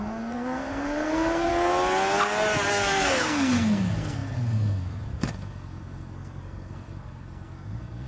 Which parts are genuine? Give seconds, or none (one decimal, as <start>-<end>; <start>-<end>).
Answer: 1.5-2.7

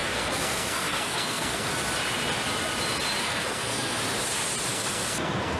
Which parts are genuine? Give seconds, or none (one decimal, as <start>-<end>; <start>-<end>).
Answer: 1.7-3.2; 4.0-4.7

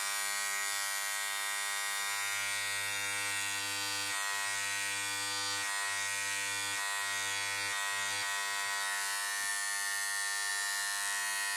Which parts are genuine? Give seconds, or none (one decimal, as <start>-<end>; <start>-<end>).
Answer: 0.0-11.6

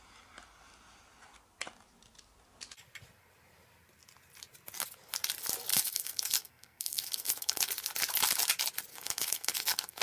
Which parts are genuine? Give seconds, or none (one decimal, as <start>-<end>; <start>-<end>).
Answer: 0.0-5.7; 7.7-8.9

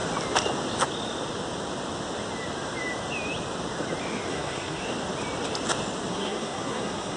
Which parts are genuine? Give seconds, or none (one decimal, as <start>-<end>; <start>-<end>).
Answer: 0.0-4.3; 4.8-6.1